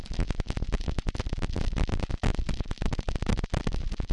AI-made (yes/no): yes